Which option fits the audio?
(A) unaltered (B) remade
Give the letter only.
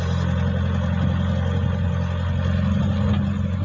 A